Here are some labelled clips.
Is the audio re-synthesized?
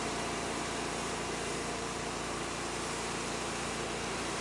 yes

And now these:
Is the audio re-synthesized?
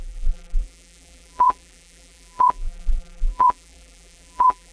yes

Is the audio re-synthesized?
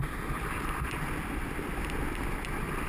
no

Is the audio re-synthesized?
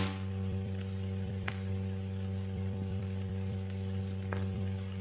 yes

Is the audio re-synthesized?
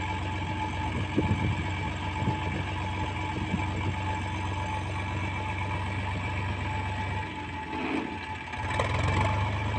no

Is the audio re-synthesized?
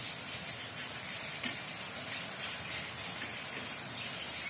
yes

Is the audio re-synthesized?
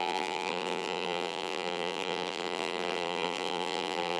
yes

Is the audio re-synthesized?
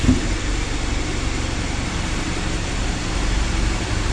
yes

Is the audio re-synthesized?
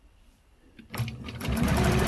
yes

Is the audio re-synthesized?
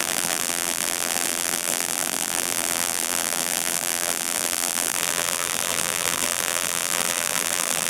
yes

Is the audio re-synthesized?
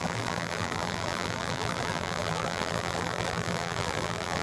yes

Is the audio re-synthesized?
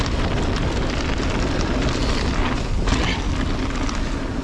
no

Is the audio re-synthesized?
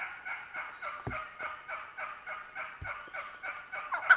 no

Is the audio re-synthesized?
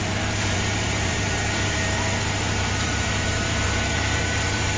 yes